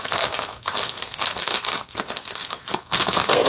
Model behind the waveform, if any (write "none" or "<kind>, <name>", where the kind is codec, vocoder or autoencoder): codec, SNAC